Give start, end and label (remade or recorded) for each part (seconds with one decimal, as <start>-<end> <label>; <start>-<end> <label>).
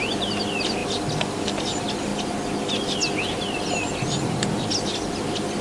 0.0-0.8 recorded; 0.8-1.6 remade; 1.6-5.6 recorded